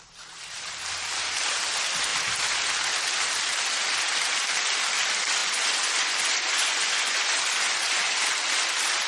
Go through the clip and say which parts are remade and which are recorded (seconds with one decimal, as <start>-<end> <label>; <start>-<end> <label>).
0.0-5.4 recorded; 5.4-8.2 remade; 8.2-9.1 recorded